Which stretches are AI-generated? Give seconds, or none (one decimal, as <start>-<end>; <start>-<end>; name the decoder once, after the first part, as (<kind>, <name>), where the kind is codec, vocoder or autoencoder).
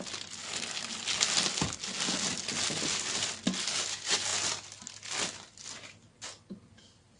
none